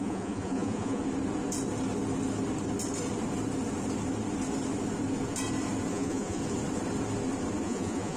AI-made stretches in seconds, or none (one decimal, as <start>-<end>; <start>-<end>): 0.0-1.0; 5.9-6.4; 7.6-8.2